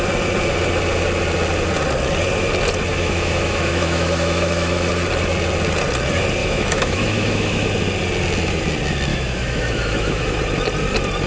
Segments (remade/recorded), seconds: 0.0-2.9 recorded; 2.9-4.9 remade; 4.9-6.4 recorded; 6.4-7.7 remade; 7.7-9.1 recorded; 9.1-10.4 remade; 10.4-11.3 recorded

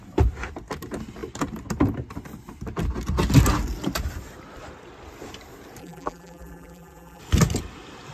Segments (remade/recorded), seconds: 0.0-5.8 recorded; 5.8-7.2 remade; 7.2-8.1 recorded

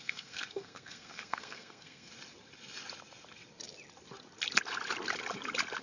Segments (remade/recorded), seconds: 0.0-2.1 remade; 2.1-5.8 recorded

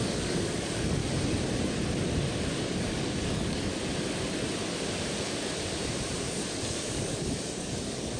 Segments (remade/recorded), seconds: 0.0-1.0 remade; 1.0-2.5 recorded; 2.5-3.7 remade; 3.7-6.3 recorded; 6.3-8.2 remade

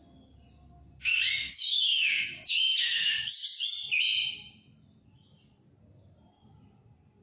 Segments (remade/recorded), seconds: 0.0-1.4 recorded; 1.4-3.1 remade; 3.1-7.2 recorded

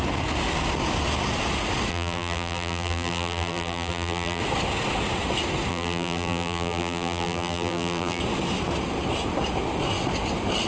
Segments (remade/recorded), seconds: 0.0-1.9 recorded; 1.9-4.4 remade; 4.4-5.7 recorded; 5.7-8.2 remade; 8.2-10.7 recorded

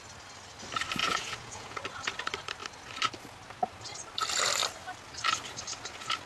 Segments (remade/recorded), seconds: 0.0-1.0 recorded; 1.0-1.8 remade; 1.8-6.3 recorded